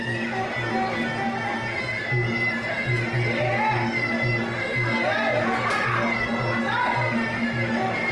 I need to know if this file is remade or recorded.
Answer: recorded